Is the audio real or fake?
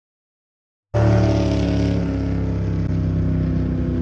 real